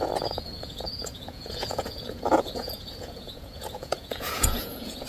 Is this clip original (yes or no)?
no